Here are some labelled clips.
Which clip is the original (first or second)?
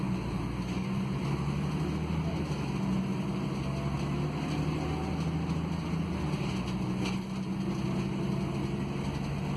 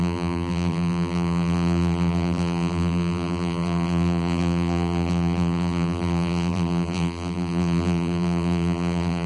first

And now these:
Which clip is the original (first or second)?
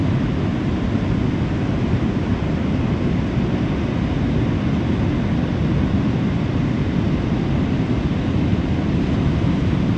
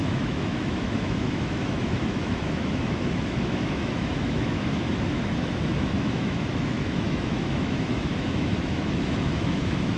first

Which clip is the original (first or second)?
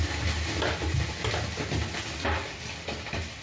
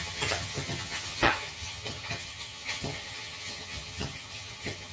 first